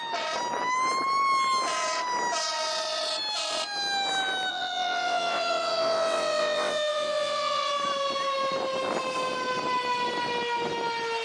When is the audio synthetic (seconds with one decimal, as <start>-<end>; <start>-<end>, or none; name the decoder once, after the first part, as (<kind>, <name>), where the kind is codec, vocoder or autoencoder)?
4.5-7.7 (vocoder, WaveNeXt)